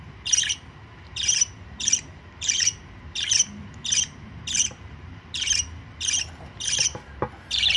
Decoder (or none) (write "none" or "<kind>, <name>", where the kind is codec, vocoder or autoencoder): vocoder, BigVGAN v2